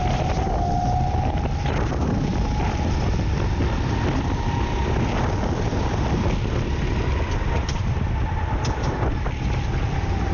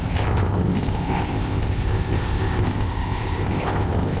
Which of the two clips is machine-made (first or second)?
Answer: second